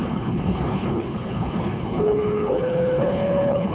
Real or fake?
fake